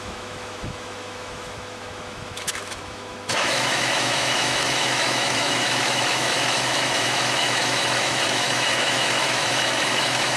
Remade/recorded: remade